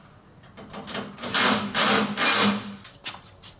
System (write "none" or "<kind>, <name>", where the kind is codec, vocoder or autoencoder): none